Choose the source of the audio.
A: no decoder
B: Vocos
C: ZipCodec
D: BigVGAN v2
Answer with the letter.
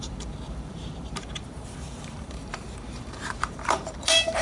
D